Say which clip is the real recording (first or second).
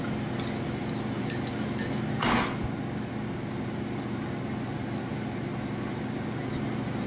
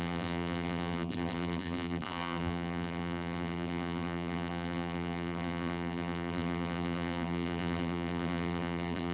first